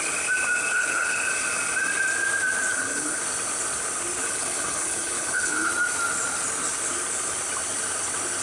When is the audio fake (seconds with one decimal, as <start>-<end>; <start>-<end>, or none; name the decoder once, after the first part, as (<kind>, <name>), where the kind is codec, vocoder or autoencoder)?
0.7-1.3 (codec, HILCodec); 2.7-3.2; 4.2-5.7